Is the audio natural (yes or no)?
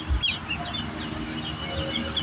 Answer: yes